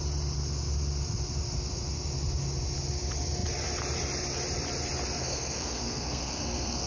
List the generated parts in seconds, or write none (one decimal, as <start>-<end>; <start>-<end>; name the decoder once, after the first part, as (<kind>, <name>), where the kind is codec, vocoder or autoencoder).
5.2-6.9 (codec, SNAC)